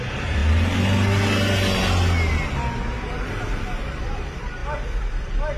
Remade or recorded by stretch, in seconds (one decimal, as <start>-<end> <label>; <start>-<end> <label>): 0.0-0.4 remade; 0.4-3.6 recorded; 3.6-4.6 remade; 4.6-5.6 recorded